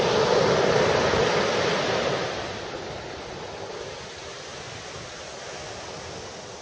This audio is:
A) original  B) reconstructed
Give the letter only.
A